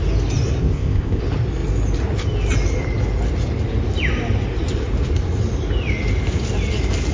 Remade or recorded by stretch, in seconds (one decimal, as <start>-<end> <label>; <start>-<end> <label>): 0.0-0.6 recorded; 0.6-1.2 remade; 1.2-7.1 recorded